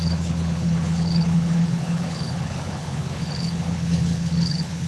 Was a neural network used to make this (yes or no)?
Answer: yes